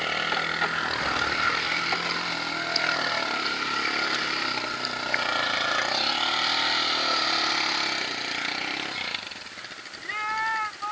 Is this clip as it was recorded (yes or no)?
yes